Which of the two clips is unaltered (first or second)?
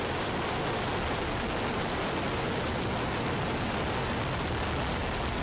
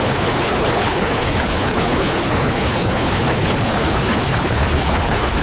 first